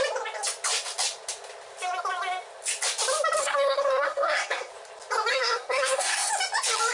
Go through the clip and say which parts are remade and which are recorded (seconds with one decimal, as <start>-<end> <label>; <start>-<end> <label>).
0.0-3.4 recorded; 3.4-4.7 remade; 4.7-5.3 recorded; 5.3-6.3 remade; 6.3-6.9 recorded